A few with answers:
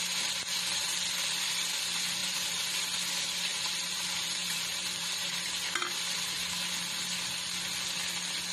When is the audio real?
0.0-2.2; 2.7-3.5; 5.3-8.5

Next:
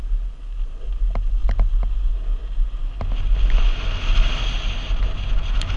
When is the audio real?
0.0-5.8

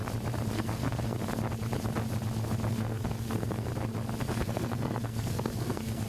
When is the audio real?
0.0-0.5; 1.2-2.7; 3.7-4.3

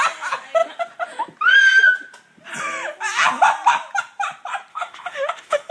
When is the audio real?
0.0-4.7

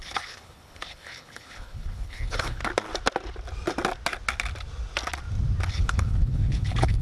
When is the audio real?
2.6-5.7

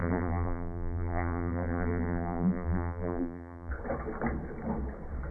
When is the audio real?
3.7-5.3